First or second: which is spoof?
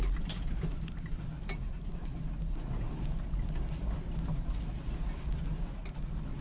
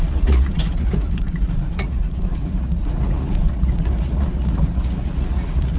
second